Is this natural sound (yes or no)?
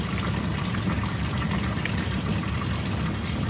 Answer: yes